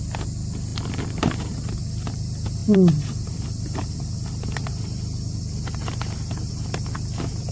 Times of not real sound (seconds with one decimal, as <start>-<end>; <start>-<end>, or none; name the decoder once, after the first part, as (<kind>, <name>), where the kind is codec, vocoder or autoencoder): 0.7-1.7 (vocoder, BigVGAN v2); 2.6-6.5